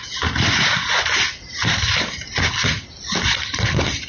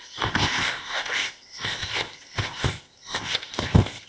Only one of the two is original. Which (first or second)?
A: first